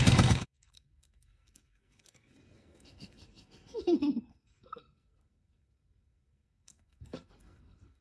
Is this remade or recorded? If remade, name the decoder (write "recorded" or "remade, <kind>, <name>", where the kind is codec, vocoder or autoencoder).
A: remade, codec, SNAC